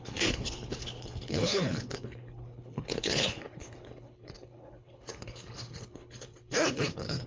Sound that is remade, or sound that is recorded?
remade